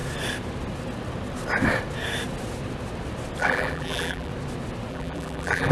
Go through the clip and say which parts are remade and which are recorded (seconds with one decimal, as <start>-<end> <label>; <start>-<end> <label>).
0.0-3.4 recorded; 3.4-4.3 remade; 4.3-4.9 recorded; 4.9-5.7 remade